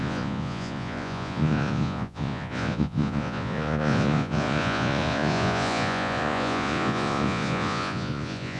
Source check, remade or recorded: remade